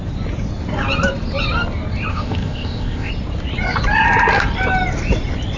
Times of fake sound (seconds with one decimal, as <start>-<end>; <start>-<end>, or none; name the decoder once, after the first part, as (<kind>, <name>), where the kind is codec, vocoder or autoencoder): 2.1-3.1 (codec, ZipCodec)